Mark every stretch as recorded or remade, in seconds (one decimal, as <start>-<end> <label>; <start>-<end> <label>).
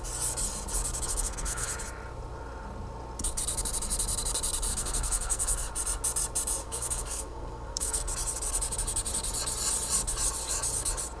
0.0-1.1 recorded; 1.1-1.7 remade; 1.7-4.7 recorded; 4.7-5.7 remade; 5.7-6.6 recorded; 6.6-8.1 remade; 8.1-11.2 recorded